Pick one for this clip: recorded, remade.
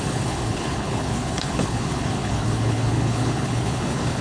remade